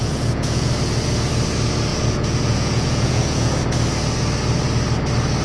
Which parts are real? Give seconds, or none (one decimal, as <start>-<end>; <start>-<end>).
0.7-1.9; 3.6-5.4

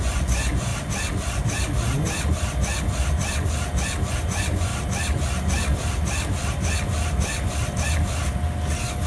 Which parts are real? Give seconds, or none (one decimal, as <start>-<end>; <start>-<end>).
0.7-4.1; 4.7-9.1

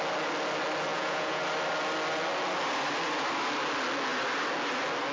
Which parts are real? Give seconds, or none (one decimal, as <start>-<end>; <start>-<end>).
0.0-0.9; 1.4-5.1

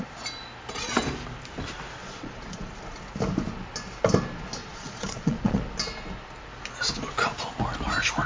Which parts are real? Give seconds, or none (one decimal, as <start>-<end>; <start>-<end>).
0.0-2.0; 2.7-4.6; 5.6-8.3

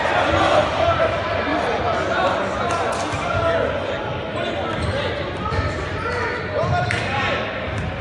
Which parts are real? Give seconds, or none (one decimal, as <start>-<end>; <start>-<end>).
0.0-8.0